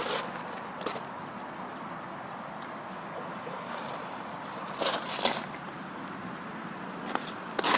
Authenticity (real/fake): real